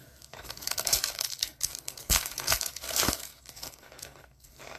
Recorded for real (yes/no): no